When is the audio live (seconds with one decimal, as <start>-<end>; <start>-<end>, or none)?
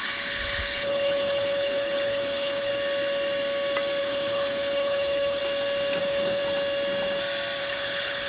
2.7-4.0; 5.4-6.0; 6.4-7.6